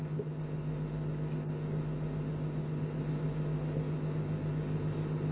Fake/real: real